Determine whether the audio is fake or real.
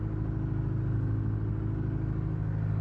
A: real